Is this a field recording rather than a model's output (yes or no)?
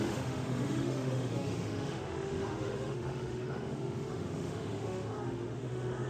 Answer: no